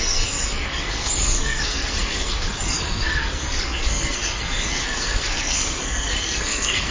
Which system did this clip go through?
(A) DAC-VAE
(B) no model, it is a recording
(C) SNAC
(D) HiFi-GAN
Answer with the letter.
C